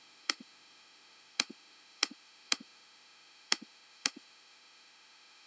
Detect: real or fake fake